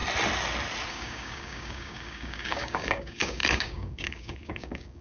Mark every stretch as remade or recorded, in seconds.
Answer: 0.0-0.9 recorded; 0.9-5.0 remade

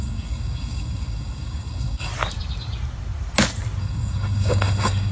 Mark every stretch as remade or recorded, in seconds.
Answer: 0.0-2.1 remade; 2.1-3.8 recorded; 3.8-5.1 remade

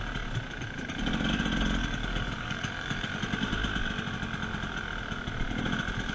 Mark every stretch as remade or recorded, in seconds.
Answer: 0.0-1.8 recorded; 1.8-3.1 remade; 3.1-6.1 recorded

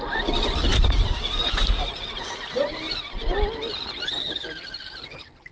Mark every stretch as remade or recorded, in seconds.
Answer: 0.0-5.5 recorded

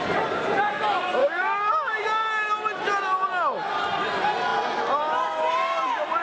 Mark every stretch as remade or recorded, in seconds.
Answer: 0.0-1.2 recorded; 1.2-2.5 remade; 2.5-6.2 recorded

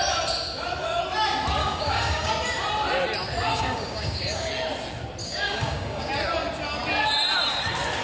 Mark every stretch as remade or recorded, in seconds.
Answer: 0.0-1.6 recorded; 1.6-2.3 remade; 2.3-3.5 recorded; 3.5-4.5 remade; 4.5-5.2 recorded; 5.2-6.1 remade; 6.1-8.0 recorded

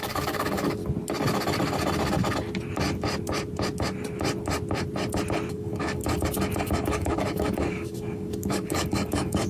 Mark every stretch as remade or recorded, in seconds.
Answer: 0.0-0.8 remade; 0.8-5.5 recorded; 5.5-6.0 remade; 6.0-6.6 recorded; 6.6-9.5 remade